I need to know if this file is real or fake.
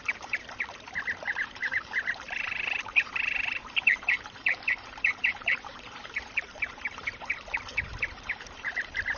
fake